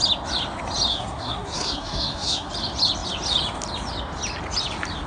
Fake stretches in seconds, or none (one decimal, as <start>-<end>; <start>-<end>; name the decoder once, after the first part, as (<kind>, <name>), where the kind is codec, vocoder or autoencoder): 0.9-2.5 (codec, SNAC)